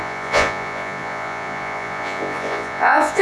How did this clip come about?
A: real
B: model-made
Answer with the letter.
B